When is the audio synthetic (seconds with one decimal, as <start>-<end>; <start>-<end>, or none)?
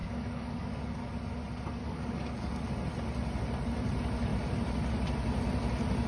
0.0-1.1; 1.8-2.5